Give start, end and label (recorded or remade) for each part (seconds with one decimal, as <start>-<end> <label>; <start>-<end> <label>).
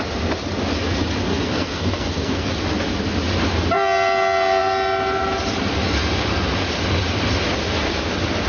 0.0-1.3 recorded; 1.3-2.5 remade; 2.5-8.5 recorded